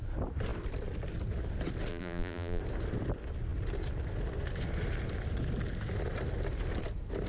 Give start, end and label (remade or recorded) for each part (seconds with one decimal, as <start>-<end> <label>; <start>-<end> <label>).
0.0-1.9 recorded; 1.9-2.6 remade; 2.6-7.3 recorded